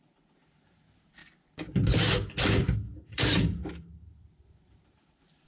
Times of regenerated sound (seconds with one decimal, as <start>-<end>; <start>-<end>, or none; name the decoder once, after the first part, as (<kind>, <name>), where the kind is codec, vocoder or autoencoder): 0.0-1.2 (vocoder, BigVGAN v2); 3.1-5.5